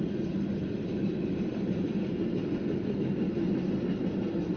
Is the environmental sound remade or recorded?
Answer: recorded